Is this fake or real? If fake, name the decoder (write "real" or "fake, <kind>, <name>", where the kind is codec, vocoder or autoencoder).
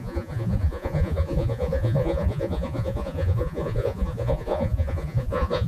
fake, vocoder, Vocos